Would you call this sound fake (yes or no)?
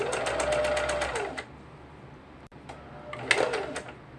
no